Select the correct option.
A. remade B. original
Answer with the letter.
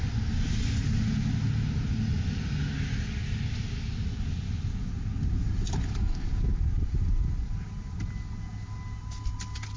B